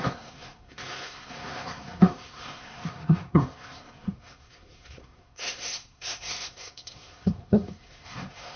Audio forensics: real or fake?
fake